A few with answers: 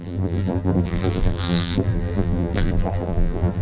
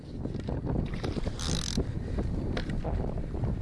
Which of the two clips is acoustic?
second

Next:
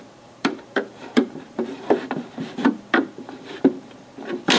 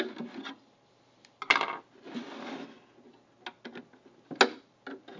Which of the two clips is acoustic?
second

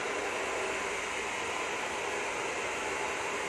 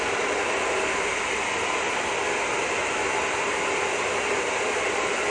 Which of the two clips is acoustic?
first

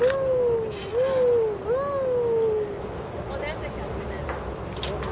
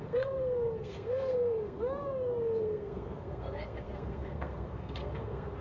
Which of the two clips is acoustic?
first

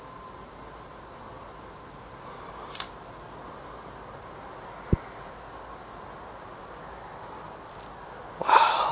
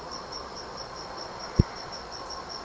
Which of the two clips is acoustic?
first